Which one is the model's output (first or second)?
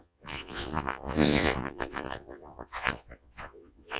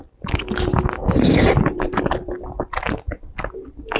first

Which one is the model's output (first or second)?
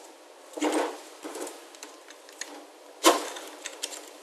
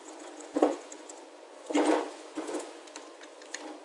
second